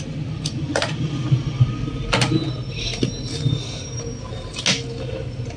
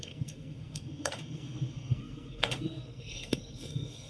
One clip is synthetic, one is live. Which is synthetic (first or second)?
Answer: second